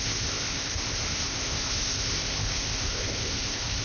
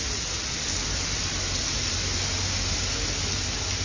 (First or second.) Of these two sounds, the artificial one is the first